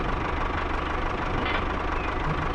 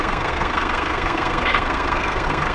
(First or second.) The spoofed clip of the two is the second